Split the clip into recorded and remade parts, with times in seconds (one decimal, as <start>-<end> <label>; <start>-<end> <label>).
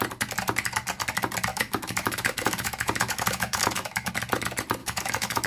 0.0-1.5 recorded; 1.5-4.1 remade; 4.1-4.8 recorded; 4.8-5.5 remade